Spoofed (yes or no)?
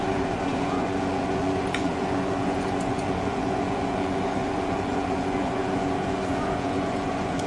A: yes